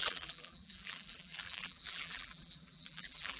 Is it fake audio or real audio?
fake